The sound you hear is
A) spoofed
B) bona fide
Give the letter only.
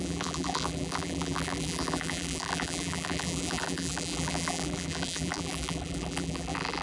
A